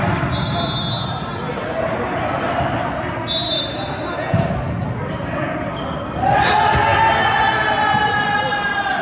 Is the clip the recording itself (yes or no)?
yes